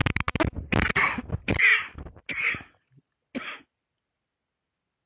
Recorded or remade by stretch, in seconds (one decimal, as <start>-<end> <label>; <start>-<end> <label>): 0.0-5.1 recorded